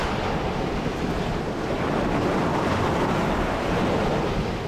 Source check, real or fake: real